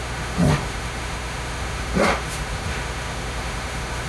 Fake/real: fake